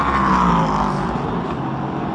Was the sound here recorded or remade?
recorded